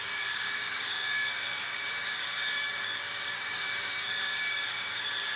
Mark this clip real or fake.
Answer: fake